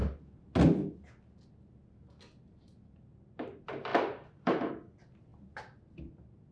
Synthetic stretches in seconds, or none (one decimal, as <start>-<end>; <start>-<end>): 3.9-4.7